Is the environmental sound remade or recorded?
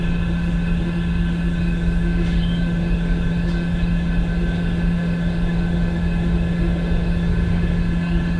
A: remade